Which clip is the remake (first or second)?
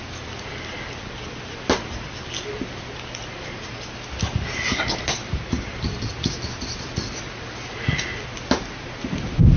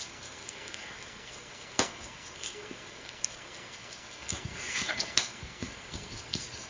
second